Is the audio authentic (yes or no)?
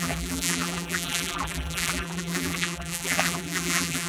no